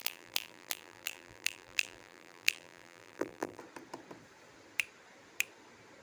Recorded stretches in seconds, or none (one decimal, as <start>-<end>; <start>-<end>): 3.6-6.0